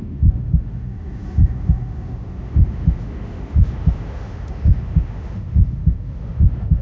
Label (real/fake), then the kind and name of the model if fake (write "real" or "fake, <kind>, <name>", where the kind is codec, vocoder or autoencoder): fake, autoencoder, DAC-VAE